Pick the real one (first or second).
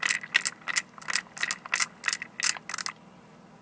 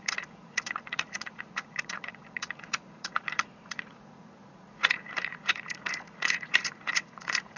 first